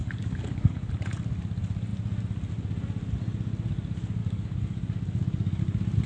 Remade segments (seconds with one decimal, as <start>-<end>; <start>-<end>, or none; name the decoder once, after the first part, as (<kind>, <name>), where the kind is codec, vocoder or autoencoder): 0.0-0.9 (codec, DAC); 4.2-5.6